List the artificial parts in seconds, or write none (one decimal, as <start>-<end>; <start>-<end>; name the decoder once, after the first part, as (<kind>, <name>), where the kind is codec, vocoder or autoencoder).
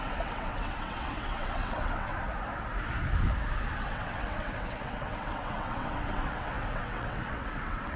0.0-2.1 (vocoder, WaveNeXt); 3.8-8.0